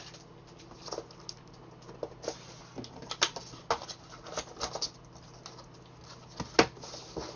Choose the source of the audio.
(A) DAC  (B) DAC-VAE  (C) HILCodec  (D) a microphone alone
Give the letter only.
D